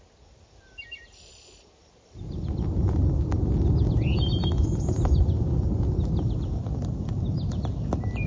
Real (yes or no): yes